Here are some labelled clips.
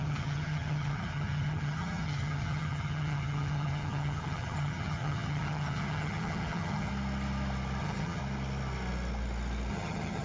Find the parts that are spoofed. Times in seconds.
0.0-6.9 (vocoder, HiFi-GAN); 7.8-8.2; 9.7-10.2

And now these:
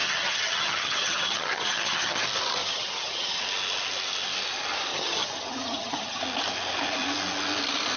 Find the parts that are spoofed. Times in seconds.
0.0-2.2 (vocoder, HiFi-GAN); 2.6-3.4; 4.9-6.2

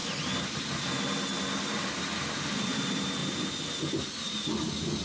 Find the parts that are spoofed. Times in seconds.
none